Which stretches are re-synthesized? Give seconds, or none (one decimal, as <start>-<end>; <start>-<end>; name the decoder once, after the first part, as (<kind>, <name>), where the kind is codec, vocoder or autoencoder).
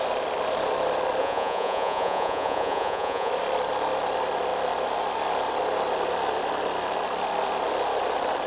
1.2-3.3 (vocoder, Vocos)